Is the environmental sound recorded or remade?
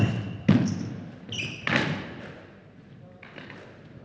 recorded